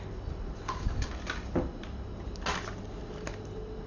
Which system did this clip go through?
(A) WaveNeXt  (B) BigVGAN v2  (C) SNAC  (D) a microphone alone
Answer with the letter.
D